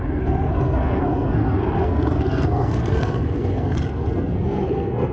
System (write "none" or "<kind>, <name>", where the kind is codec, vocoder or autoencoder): codec, SNAC